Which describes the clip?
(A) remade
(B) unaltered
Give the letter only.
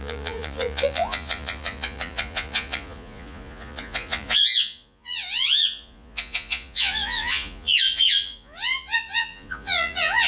A